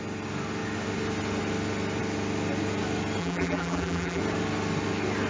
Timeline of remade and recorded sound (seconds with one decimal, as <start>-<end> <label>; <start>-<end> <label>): 0.0-3.2 recorded; 3.2-4.2 remade; 4.2-5.3 recorded